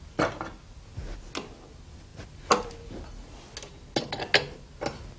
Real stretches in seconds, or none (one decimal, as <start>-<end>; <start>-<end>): 0.0-5.2